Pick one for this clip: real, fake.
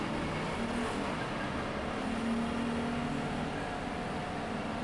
real